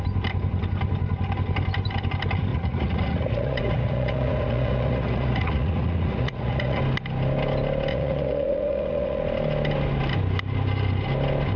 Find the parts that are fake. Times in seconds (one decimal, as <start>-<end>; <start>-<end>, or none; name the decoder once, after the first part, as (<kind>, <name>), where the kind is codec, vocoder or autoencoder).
2.5-6.8 (vocoder, Vocos); 7.9-9.2